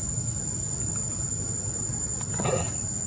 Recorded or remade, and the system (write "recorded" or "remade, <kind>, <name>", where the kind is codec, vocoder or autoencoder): recorded